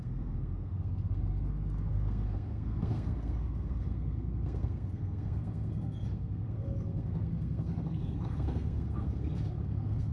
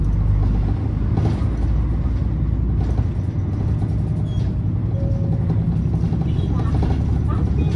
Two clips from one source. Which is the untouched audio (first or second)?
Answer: second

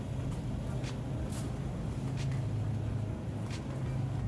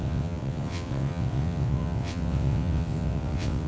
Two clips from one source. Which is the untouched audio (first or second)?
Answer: first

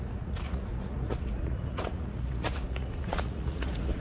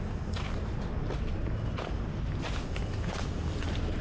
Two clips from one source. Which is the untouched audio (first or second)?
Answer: second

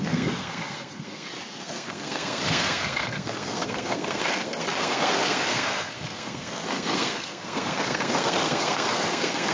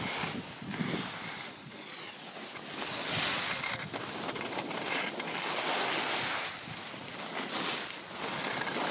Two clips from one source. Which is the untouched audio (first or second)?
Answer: second